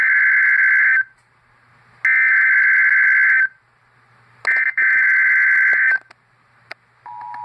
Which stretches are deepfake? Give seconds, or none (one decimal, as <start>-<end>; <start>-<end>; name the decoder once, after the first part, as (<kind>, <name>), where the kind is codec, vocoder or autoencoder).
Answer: none